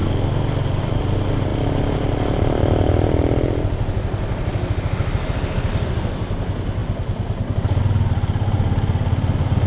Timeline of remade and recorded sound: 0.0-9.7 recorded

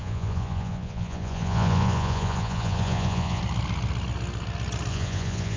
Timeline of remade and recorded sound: 0.0-3.4 remade; 3.4-4.9 recorded; 4.9-5.6 remade

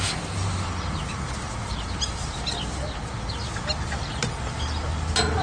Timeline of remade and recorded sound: 0.0-5.4 recorded

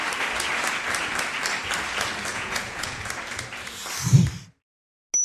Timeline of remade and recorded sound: 0.0-2.3 recorded; 2.3-3.1 remade; 3.1-5.2 recorded

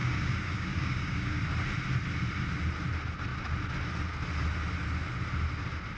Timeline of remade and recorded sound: 0.0-1.4 remade; 1.4-6.0 recorded

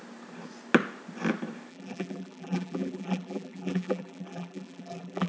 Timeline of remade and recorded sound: 0.0-1.7 recorded; 1.7-5.3 remade

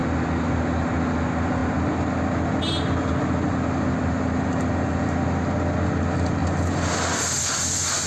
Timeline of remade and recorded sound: 0.0-8.1 recorded